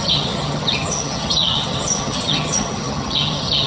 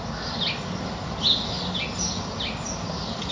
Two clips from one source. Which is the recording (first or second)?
second